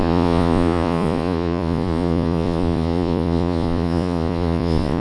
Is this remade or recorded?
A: remade